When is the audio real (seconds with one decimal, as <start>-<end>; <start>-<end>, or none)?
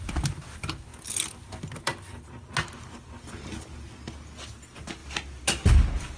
0.0-6.2